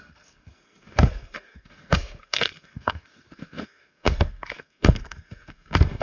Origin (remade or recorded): remade